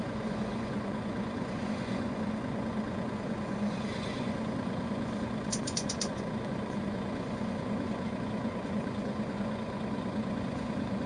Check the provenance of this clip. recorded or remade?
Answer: remade